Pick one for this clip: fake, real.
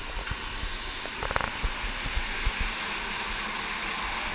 real